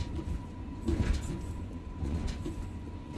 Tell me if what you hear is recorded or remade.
remade